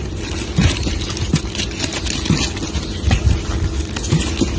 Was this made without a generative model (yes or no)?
yes